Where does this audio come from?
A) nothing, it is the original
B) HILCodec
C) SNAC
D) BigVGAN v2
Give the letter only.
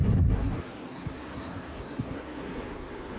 C